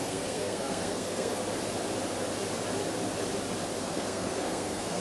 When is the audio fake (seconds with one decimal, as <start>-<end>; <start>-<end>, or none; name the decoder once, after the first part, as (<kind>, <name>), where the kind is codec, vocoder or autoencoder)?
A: 0.0-1.4 (codec, SNAC); 3.8-5.0